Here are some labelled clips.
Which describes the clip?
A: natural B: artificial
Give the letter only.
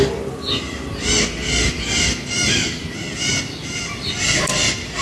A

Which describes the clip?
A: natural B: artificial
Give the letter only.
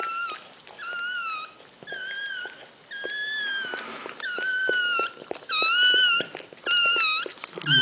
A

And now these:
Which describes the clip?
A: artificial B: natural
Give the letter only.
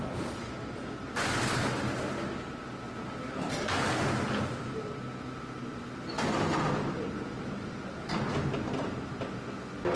B